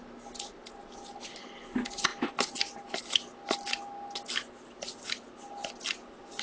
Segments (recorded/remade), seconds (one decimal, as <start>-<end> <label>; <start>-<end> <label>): 0.0-6.4 recorded